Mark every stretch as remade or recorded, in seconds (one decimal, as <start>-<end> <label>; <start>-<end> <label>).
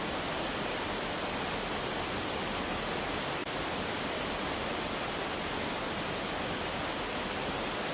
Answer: 0.0-7.9 recorded